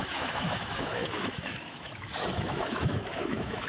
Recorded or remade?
remade